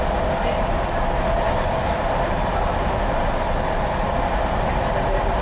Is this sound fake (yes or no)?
no